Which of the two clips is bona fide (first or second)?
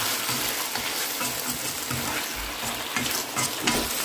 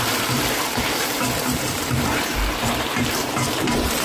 first